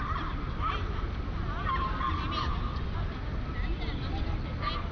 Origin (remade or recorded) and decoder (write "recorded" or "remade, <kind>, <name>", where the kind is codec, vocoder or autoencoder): recorded